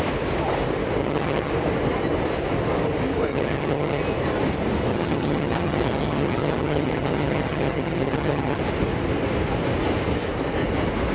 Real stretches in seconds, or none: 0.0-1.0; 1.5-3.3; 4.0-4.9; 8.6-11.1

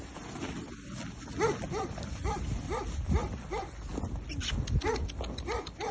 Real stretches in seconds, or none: 0.0-5.9

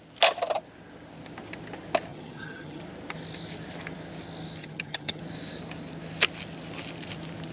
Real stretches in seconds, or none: 0.0-2.1; 2.8-4.6; 5.2-7.5